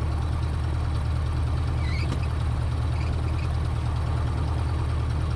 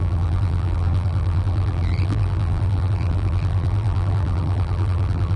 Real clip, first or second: first